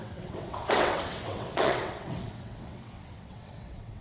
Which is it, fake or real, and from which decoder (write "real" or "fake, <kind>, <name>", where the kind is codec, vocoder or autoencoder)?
fake, vocoder, WaveNeXt